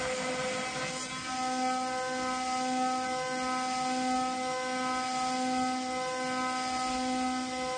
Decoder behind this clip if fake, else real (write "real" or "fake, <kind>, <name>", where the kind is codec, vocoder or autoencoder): real